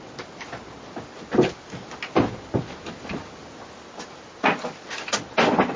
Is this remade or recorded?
recorded